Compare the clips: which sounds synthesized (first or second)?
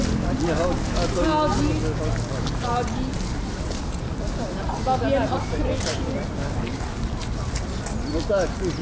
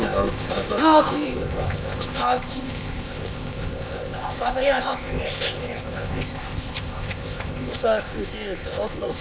second